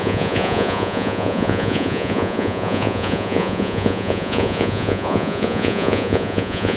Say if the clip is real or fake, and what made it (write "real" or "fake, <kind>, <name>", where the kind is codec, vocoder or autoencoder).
fake, vocoder, Vocos